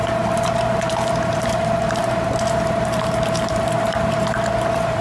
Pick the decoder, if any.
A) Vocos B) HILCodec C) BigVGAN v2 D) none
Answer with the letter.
C